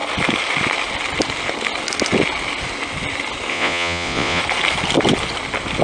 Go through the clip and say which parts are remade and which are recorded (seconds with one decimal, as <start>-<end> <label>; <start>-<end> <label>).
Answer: 0.0-3.5 recorded; 3.5-4.4 remade; 4.4-5.8 recorded